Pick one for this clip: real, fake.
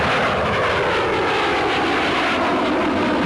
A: real